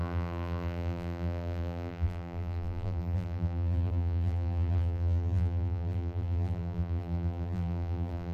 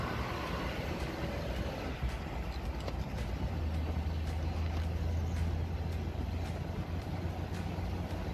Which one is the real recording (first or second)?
second